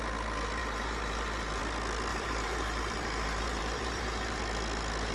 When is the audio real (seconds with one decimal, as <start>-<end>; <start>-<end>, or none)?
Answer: 0.0-0.6; 1.6-2.1; 4.4-5.1